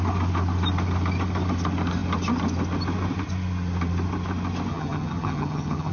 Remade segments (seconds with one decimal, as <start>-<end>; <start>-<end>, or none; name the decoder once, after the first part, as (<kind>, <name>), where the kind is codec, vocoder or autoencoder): 4.7-5.9 (vocoder, HiFi-GAN)